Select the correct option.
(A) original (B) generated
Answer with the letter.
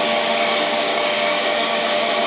B